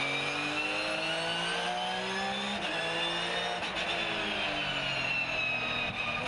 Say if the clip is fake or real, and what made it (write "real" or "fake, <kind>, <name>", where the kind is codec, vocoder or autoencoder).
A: real